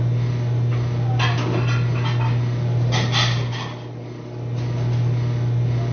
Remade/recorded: recorded